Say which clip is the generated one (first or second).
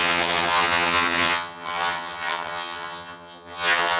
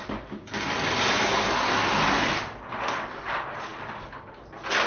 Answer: first